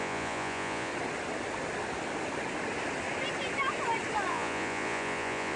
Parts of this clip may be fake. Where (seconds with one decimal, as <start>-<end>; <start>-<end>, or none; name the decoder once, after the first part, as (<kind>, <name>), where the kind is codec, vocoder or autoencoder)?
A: 0.0-0.9 (vocoder, Vocos); 4.3-5.6